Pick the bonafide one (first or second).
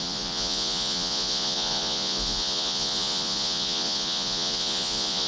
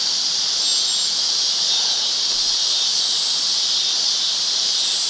second